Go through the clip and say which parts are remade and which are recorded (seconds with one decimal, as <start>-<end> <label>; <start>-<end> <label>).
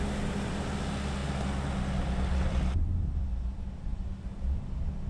0.0-5.1 recorded